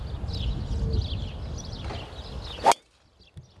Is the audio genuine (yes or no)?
yes